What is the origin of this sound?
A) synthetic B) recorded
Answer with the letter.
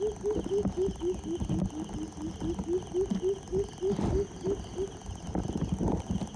B